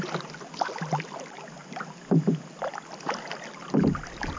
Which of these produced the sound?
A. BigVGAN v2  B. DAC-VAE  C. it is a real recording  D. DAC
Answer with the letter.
C